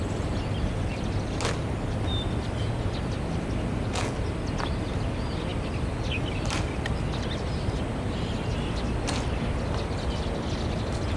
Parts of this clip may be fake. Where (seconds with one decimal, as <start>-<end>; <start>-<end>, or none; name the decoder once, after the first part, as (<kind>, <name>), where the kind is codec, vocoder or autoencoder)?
none